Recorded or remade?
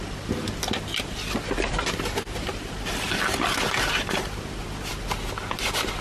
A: remade